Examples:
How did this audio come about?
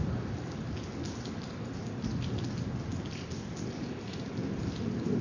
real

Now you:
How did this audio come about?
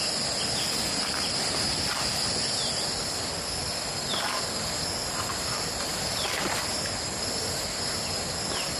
real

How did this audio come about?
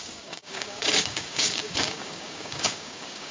fake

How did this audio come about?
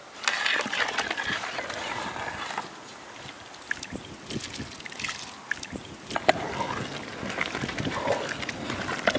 real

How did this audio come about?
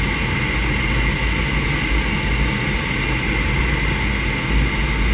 real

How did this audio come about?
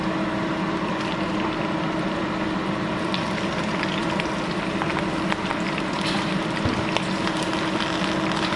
real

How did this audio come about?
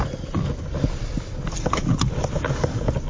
real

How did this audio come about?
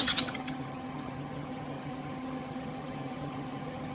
fake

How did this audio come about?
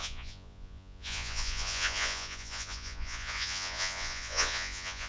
fake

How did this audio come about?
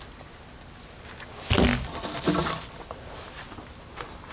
real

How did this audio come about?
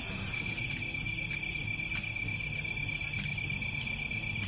real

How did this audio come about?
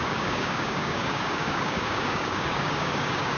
fake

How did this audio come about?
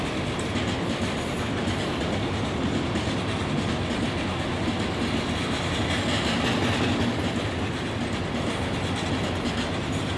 real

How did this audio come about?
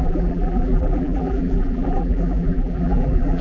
fake